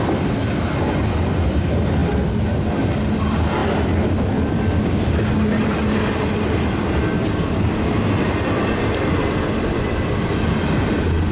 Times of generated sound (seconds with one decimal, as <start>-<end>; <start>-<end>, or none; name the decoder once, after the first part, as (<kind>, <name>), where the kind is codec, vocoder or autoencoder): none